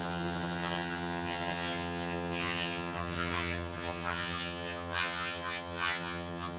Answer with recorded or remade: remade